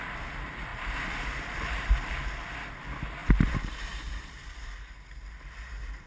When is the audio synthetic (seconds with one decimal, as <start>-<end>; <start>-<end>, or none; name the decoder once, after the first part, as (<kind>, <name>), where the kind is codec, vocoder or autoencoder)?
0.7-2.2 (vocoder, BigVGAN v2); 3.2-4.9